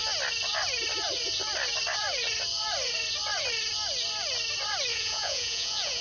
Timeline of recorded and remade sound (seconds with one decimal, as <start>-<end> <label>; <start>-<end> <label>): 0.0-4.9 recorded; 4.9-6.0 remade